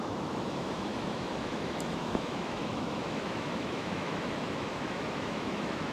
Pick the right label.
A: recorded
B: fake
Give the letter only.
B